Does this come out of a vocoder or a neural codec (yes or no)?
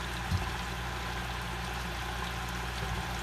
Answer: no